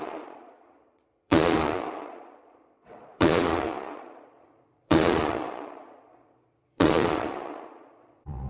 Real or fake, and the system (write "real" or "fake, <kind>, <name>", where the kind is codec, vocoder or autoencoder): fake, vocoder, Vocos